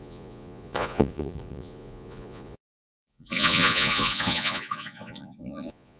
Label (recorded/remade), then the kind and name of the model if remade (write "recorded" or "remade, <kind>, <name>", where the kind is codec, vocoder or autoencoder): remade, vocoder, Vocos